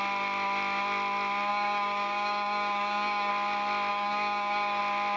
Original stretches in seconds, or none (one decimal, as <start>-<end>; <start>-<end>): 0.0-1.5; 3.3-3.9; 4.8-5.2